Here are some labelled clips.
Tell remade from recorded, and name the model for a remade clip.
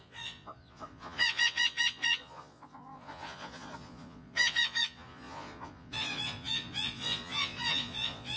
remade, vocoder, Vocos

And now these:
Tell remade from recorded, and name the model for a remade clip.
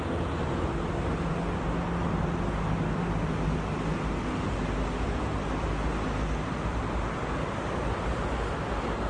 recorded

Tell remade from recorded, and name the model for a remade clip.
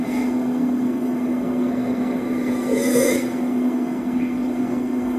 remade, codec, SNAC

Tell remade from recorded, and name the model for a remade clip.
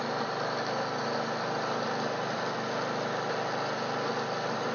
recorded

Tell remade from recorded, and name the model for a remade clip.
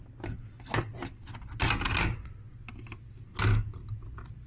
recorded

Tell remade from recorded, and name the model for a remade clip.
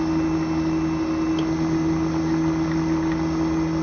recorded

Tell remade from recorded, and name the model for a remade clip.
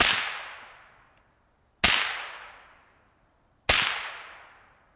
recorded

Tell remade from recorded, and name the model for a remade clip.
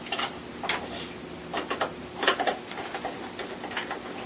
recorded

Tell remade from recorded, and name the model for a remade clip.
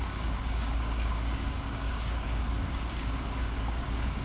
remade, codec, DAC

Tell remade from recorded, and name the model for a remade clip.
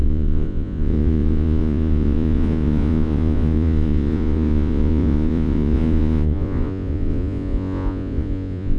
remade, vocoder, Vocos